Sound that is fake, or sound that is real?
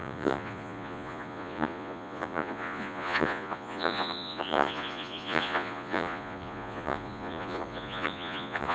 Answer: fake